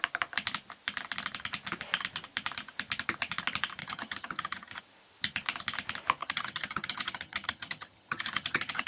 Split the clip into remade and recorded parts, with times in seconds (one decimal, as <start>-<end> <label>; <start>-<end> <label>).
0.0-3.8 recorded; 3.8-4.8 remade; 4.8-6.2 recorded; 6.2-8.9 remade